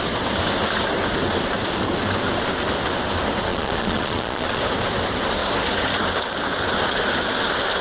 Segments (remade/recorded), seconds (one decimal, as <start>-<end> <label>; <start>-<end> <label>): 0.0-3.5 recorded; 3.5-4.6 remade; 4.6-7.8 recorded